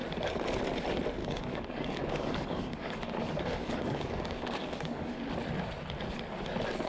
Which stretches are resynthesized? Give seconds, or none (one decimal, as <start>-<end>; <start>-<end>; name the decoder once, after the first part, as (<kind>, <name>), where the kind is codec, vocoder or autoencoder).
1.2-5.3 (codec, DAC)